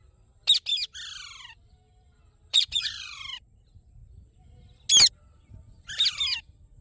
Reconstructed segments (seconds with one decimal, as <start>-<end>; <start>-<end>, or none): 2.5-3.2